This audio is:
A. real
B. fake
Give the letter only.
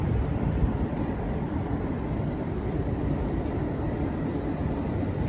B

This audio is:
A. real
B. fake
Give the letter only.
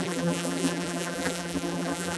B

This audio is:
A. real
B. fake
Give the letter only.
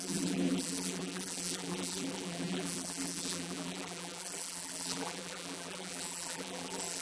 B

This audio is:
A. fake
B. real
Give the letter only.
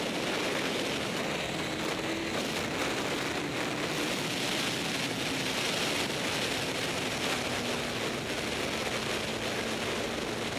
B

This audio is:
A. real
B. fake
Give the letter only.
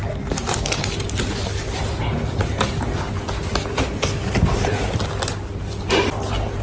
A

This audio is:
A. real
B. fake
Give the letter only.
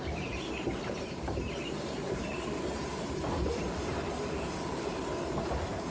B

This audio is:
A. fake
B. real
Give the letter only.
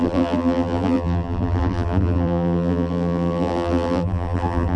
A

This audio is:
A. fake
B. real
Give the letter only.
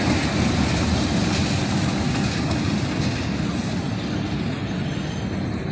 B